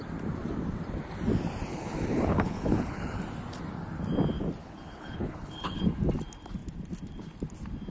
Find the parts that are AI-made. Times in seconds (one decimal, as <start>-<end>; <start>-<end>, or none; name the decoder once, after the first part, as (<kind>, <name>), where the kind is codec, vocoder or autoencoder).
1.7-3.2 (codec, HILCodec); 4.6-5.8